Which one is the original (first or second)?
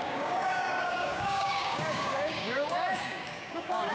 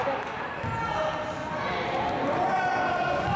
second